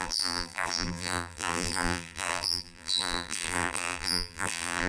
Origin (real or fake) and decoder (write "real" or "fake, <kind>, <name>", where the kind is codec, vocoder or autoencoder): fake, vocoder, BigVGAN v2